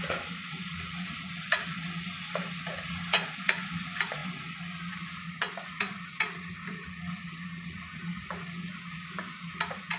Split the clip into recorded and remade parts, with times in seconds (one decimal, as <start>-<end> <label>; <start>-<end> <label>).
0.0-10.0 remade